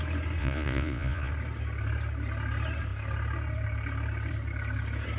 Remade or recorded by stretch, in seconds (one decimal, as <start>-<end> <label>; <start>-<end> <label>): 0.0-0.4 recorded; 0.4-1.3 remade; 1.3-5.2 recorded